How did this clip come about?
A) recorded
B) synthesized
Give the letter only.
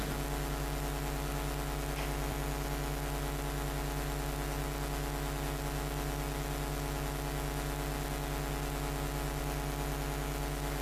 A